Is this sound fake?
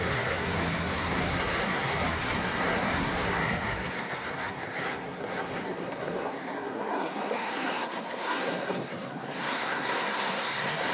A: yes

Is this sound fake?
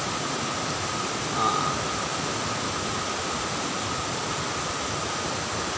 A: no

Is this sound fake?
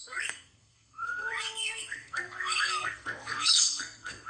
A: yes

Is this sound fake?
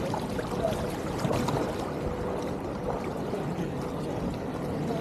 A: no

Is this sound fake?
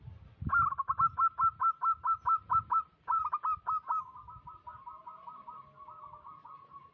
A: no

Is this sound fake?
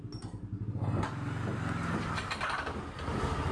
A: no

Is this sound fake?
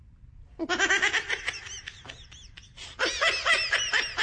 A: no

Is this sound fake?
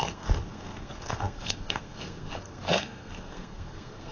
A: yes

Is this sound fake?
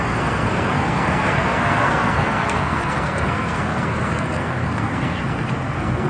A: yes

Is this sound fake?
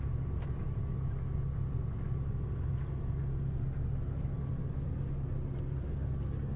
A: no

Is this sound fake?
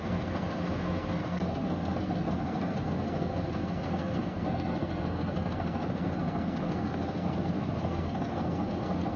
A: yes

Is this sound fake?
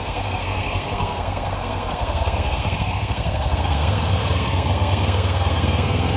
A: yes